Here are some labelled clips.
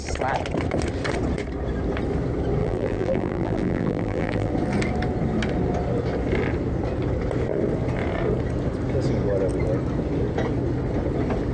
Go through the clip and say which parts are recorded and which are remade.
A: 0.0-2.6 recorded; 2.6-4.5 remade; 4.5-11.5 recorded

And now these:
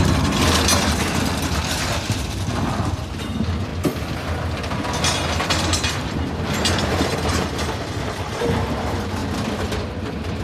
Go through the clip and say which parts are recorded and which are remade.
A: 0.0-10.4 remade